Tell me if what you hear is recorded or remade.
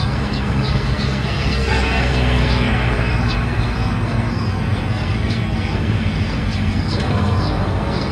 remade